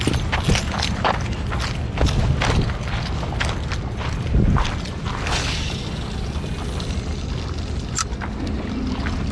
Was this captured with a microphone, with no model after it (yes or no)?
yes